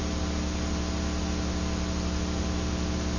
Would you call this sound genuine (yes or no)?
yes